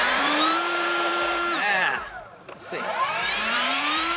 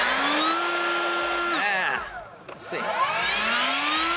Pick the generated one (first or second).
first